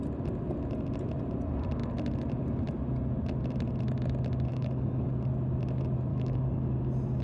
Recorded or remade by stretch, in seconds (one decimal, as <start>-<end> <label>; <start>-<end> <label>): 0.0-4.5 recorded; 4.5-5.1 remade; 5.1-6.1 recorded; 6.1-6.8 remade; 6.8-7.2 recorded